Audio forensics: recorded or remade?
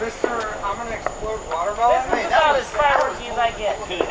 recorded